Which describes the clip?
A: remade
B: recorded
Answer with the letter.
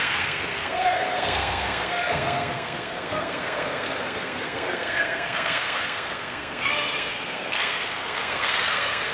A